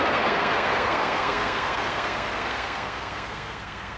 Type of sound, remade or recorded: remade